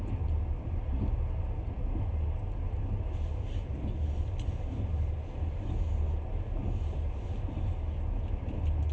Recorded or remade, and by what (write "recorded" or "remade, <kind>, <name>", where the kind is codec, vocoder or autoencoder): recorded